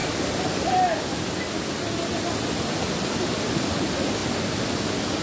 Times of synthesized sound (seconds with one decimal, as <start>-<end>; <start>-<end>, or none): none